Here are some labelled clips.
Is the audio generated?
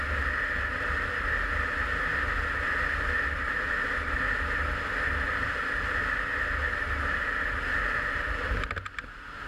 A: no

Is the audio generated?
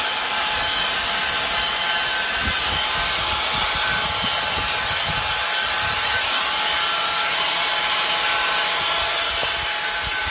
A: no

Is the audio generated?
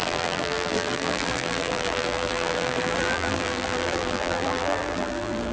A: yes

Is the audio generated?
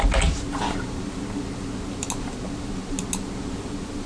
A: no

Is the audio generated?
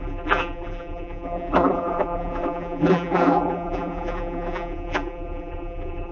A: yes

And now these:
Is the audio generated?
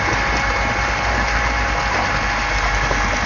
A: no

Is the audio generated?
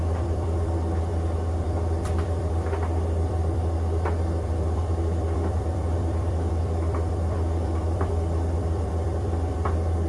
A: yes